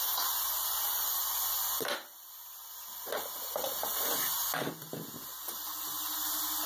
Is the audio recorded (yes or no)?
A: yes